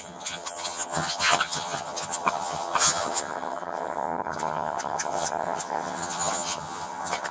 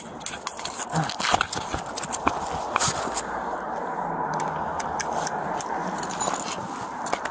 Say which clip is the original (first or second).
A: second